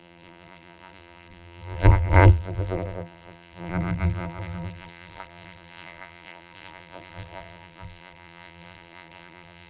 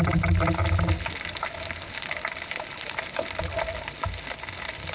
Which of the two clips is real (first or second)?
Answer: second